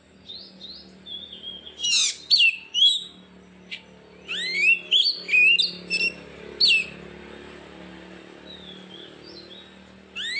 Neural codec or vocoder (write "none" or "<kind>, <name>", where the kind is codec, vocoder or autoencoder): none